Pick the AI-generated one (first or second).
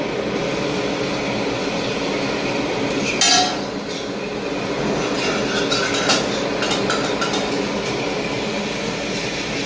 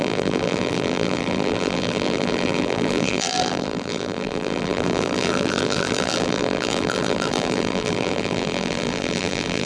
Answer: second